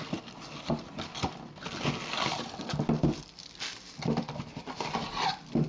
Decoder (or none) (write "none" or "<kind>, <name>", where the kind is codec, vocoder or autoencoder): none